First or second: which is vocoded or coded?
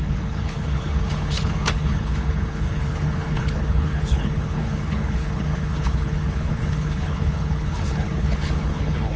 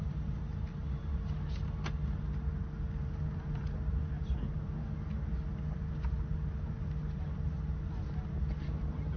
first